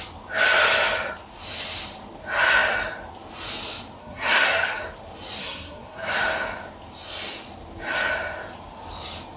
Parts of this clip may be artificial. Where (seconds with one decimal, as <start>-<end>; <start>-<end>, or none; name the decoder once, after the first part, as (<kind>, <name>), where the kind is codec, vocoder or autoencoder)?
4.0-4.8 (codec, SNAC); 5.4-6.2